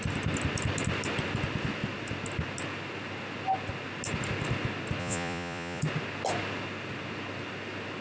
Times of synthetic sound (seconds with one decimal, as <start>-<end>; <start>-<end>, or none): 5.0-5.8